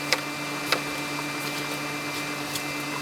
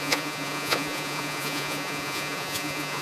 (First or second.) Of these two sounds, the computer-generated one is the second